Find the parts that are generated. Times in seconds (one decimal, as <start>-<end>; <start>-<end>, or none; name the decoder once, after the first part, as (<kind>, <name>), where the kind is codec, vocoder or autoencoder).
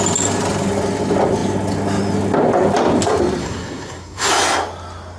3.4-4.3 (codec, SNAC)